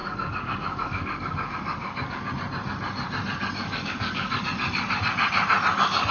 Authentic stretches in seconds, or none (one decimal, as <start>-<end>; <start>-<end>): 2.3-3.6; 4.4-6.1